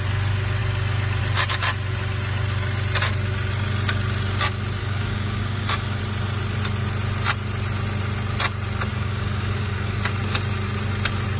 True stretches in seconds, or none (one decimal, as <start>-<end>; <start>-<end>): 0.0-4.8; 6.0-8.9; 10.0-11.4